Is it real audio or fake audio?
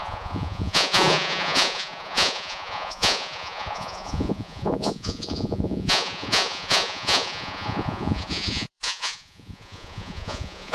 fake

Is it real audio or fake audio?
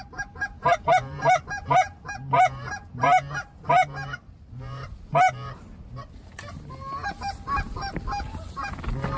real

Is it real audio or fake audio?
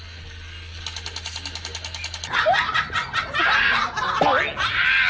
real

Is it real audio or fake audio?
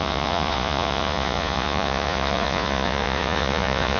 fake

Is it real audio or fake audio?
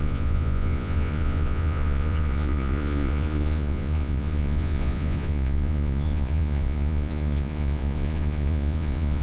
fake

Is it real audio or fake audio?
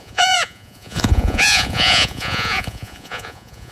fake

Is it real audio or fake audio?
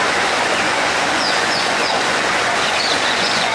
fake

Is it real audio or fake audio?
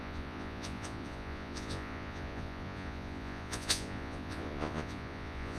fake